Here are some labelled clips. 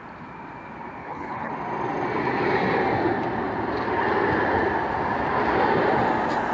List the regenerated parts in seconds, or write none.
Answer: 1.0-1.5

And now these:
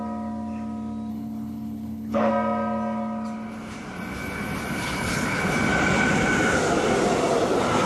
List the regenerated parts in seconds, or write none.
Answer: 1.1-2.3; 4.8-5.4